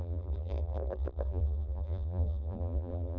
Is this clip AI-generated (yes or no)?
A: yes